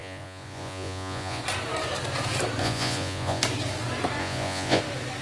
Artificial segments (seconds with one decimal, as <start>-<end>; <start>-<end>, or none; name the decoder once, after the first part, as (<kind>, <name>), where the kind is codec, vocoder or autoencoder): 0.0-1.4 (vocoder, Vocos); 2.6-3.4; 4.2-4.8